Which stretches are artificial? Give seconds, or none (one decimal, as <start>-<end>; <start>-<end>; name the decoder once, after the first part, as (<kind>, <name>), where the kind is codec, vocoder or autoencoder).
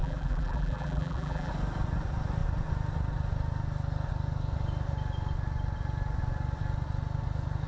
0.0-1.5 (vocoder, BigVGAN v2)